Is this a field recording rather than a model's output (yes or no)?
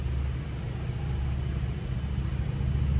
yes